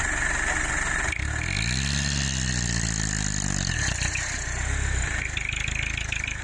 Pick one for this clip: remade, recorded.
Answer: recorded